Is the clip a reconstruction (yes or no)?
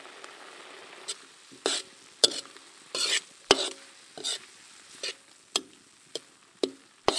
no